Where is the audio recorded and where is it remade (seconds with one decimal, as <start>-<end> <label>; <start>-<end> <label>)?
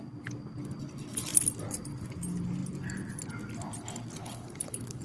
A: 0.0-4.2 recorded; 4.2-5.0 remade